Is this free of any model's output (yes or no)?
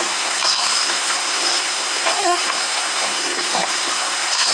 no